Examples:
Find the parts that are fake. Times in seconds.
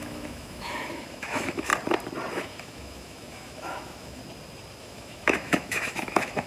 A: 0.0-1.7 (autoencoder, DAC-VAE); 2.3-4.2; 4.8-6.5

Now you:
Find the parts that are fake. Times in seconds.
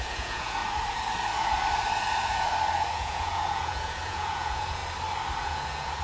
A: 0.0-0.6 (vocoder, Vocos); 2.9-4.8; 5.4-6.0